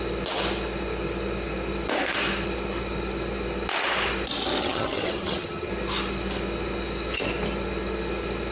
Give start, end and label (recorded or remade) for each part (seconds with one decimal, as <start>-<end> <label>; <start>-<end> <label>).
0.0-4.6 recorded; 4.6-5.7 remade; 5.7-8.5 recorded